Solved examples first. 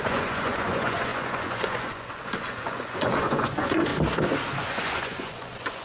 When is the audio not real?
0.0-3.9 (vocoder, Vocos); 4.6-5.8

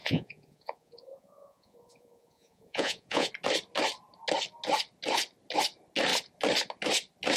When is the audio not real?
0.0-3.3 (vocoder, Vocos)

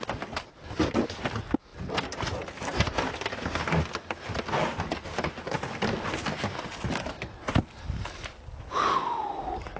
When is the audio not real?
none

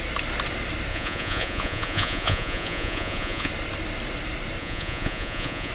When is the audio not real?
0.9-3.5 (vocoder, Vocos); 4.6-5.7

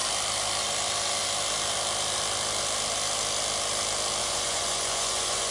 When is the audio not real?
4.2-5.5 (vocoder, Vocos)

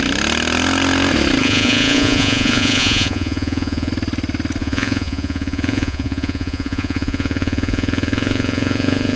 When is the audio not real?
1.4-3.9 (vocoder, Vocos); 4.6-9.2

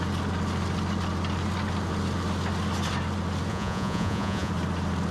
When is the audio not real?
3.5-4.5 (vocoder, Vocos)

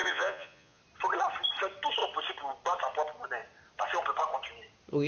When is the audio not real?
0.0-0.8 (vocoder, Vocos)